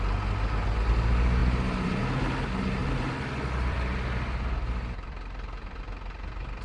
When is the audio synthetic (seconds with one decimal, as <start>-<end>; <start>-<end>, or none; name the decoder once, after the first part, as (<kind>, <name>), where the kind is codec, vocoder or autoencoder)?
1.4-2.0 (vocoder, BigVGAN v2); 2.8-5.8